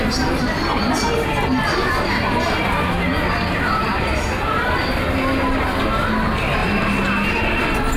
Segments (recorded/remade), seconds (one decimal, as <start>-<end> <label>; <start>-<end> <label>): 0.0-8.0 recorded